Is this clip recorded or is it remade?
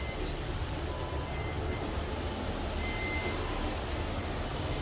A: recorded